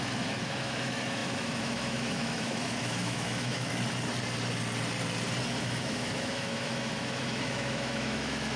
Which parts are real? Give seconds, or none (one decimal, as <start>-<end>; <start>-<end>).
3.7-5.6